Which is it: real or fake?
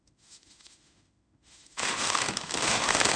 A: fake